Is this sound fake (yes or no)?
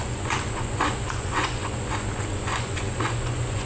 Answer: yes